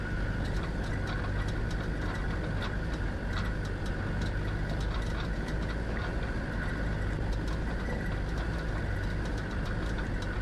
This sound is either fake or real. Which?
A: real